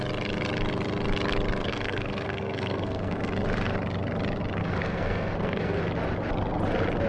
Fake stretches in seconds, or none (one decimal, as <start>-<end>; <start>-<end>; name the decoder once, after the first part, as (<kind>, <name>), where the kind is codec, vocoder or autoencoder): 1.6-3.3 (codec, SNAC); 4.6-5.8